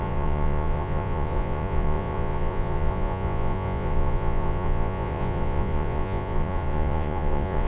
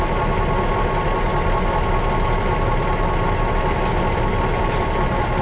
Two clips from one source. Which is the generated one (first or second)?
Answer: first